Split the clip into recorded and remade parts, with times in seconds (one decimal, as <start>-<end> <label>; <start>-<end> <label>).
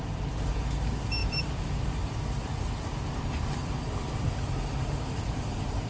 0.0-1.2 recorded; 1.2-2.1 remade; 2.1-3.6 recorded; 3.6-5.9 remade